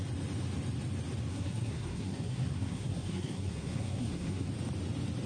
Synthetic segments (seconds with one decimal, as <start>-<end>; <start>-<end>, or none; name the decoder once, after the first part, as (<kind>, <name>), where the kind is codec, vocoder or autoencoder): 1.3-4.5 (codec, SNAC)